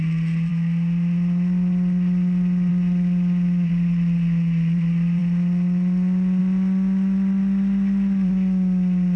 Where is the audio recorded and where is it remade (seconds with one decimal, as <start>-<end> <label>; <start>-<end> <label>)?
0.0-9.2 recorded